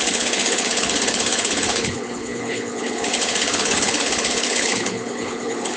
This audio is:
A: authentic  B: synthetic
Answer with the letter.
B